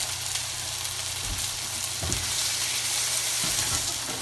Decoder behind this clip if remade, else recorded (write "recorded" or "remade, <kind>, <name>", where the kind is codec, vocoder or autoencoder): recorded